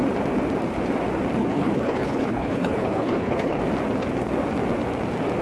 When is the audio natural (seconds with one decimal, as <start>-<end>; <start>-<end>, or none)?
0.0-1.4; 3.6-5.4